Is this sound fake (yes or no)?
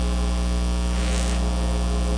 no